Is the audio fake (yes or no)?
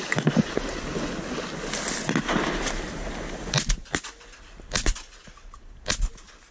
no